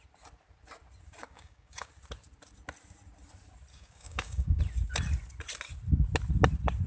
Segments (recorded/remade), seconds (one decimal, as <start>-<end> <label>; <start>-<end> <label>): 0.0-1.2 recorded; 1.2-1.9 remade; 1.9-3.7 recorded; 3.7-4.6 remade; 4.6-6.9 recorded